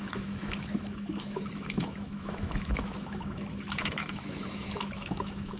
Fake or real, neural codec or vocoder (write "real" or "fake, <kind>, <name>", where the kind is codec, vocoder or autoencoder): fake, autoencoder, DAC-VAE